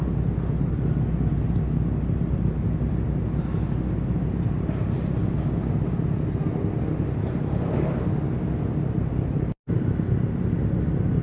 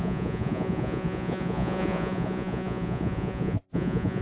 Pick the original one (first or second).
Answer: first